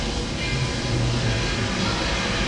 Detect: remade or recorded recorded